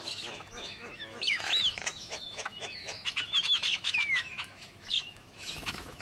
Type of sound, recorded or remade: remade